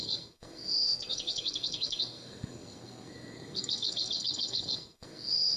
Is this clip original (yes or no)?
no